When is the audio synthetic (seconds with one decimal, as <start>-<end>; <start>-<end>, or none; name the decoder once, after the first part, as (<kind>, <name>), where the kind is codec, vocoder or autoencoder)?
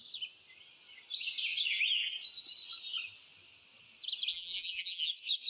4.3-5.1 (vocoder, BigVGAN v2)